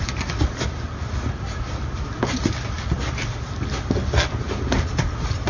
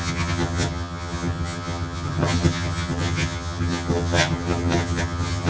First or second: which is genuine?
first